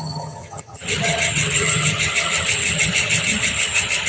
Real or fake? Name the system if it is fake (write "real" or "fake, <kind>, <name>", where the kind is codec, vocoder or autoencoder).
fake, vocoder, HiFi-GAN